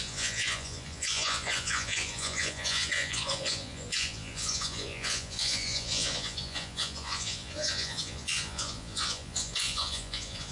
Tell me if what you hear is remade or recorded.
remade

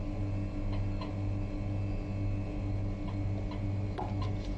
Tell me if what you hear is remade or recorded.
recorded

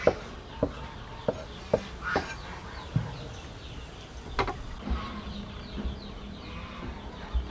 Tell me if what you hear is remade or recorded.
recorded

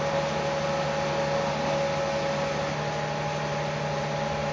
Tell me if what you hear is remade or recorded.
recorded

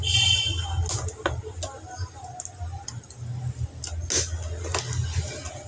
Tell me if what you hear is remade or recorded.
recorded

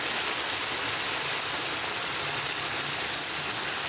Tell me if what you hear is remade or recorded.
recorded